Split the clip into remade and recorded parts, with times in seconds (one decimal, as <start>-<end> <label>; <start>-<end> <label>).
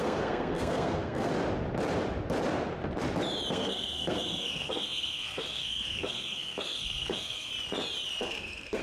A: 0.0-1.3 remade; 1.3-3.5 recorded; 3.5-7.5 remade; 7.5-8.2 recorded; 8.2-8.8 remade